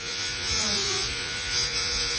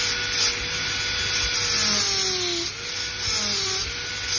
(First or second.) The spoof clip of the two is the first